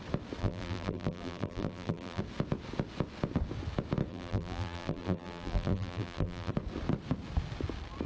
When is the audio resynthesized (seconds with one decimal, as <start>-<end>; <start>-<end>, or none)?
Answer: 0.4-2.2; 4.1-6.5